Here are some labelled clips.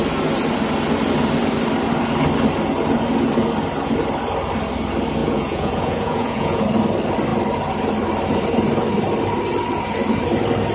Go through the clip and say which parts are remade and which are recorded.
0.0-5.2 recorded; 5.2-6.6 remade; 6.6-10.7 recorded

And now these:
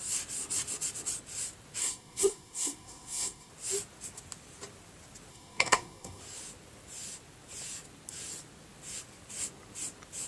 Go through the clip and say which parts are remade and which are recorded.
0.0-1.8 recorded; 1.8-3.5 remade; 3.5-5.3 recorded; 5.3-6.2 remade; 6.2-10.3 recorded

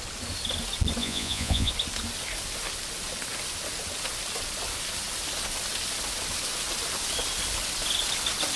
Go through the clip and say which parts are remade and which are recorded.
0.0-1.0 recorded; 1.0-1.7 remade; 1.7-8.6 recorded